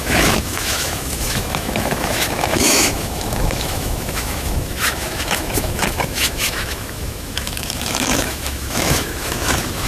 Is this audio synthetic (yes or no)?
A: yes